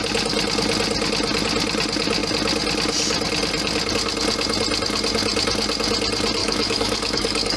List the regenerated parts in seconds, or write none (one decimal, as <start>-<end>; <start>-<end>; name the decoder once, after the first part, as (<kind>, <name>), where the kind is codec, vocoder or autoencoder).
6.4-7.6 (codec, DAC)